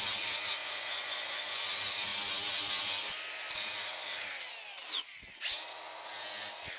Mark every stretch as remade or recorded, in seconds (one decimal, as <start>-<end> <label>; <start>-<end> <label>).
0.0-0.6 recorded; 0.6-1.6 remade; 1.6-6.8 recorded

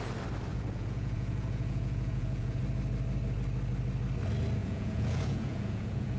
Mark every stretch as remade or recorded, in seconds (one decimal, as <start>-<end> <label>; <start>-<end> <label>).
0.0-0.5 recorded; 0.5-2.6 remade; 2.6-4.6 recorded; 4.6-6.2 remade

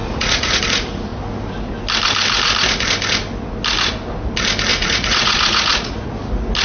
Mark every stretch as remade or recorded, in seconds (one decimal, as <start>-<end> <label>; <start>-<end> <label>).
0.0-0.6 remade; 0.6-4.7 recorded; 4.7-6.1 remade; 6.1-6.6 recorded

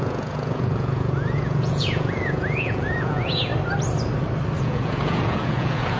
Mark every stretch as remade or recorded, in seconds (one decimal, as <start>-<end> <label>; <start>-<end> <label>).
0.0-3.5 remade; 3.5-4.6 recorded; 4.6-6.0 remade